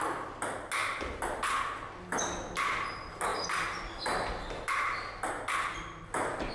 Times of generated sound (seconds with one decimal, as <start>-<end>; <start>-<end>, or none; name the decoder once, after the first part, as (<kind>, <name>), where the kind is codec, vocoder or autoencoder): none